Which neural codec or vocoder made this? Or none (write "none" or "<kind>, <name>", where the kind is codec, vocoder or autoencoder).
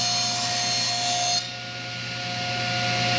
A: none